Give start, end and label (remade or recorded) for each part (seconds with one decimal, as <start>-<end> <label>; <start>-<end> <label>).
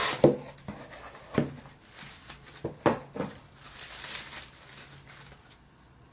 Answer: 0.0-6.1 recorded